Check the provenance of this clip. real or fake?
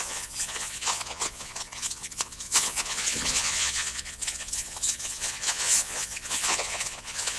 fake